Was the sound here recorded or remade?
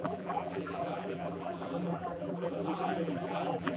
remade